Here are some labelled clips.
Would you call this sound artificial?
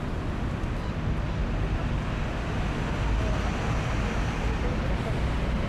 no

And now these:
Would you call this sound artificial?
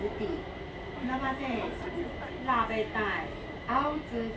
no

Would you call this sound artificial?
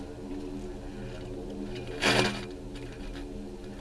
no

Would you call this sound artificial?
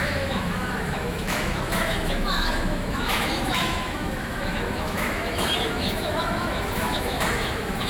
yes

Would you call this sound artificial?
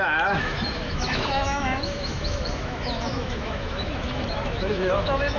yes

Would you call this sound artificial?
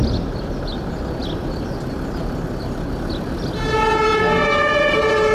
no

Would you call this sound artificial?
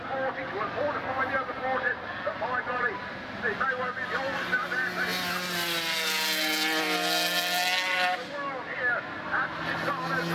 no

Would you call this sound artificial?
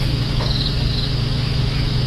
yes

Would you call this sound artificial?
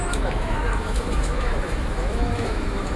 yes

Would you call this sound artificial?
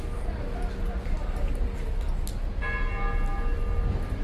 no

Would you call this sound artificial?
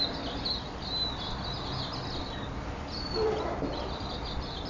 no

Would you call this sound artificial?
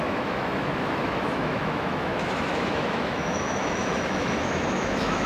yes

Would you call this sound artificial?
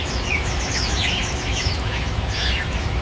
yes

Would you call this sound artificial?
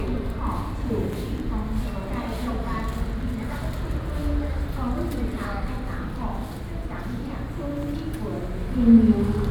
no